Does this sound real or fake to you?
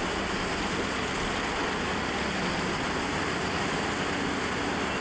real